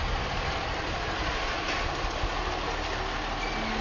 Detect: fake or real real